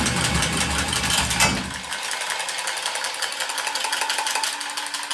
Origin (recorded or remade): recorded